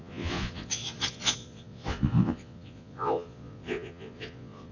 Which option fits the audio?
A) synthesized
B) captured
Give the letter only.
A